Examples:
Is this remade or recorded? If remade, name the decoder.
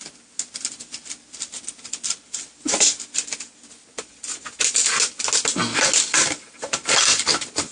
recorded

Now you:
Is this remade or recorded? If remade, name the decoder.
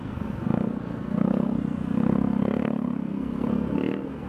remade, codec, SNAC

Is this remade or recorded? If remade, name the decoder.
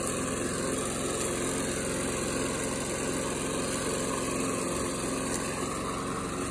recorded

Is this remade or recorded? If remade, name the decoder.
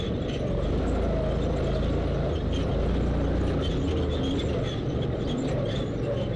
recorded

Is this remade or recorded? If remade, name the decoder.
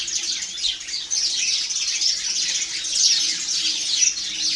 recorded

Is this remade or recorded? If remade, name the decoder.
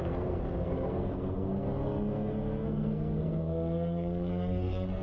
remade, codec, SNAC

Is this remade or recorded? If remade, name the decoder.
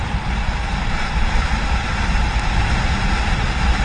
recorded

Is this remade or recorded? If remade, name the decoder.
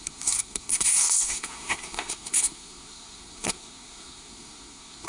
remade, codec, SNAC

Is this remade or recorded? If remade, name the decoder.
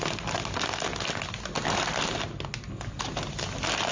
recorded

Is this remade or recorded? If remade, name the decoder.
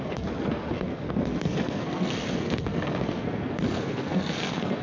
remade, codec, SNAC